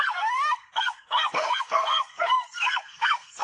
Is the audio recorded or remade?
remade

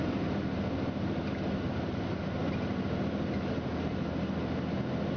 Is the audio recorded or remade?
recorded